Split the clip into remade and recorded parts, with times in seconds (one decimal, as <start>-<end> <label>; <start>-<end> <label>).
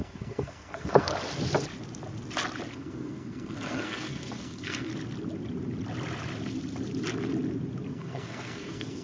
0.0-1.1 remade; 1.1-2.7 recorded; 2.7-4.9 remade; 4.9-7.9 recorded; 7.9-9.0 remade